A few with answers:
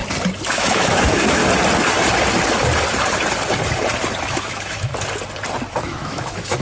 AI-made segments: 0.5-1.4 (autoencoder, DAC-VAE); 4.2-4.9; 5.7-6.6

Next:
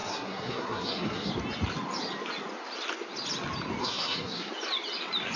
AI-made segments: 0.0-1.3 (codec, SNAC); 3.8-4.5

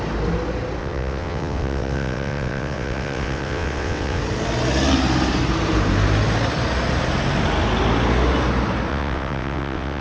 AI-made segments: 0.8-4.2 (vocoder, WaveNeXt); 8.9-10.0

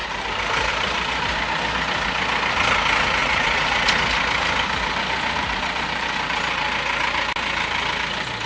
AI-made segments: 3.2-3.9 (vocoder, Vocos)

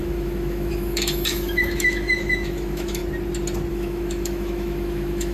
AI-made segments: 0.0-3.0 (autoencoder, DAC-VAE); 3.7-5.3

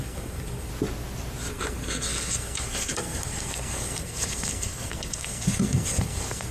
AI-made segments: 0.0-0.7 (codec, SNAC); 1.5-6.5

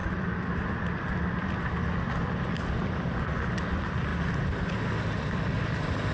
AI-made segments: none